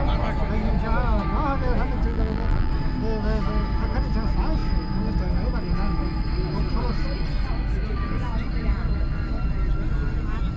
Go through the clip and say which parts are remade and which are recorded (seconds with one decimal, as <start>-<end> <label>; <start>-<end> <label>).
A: 0.0-2.1 recorded; 2.1-2.7 remade; 2.7-10.6 recorded